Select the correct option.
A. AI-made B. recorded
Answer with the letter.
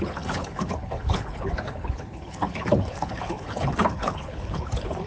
A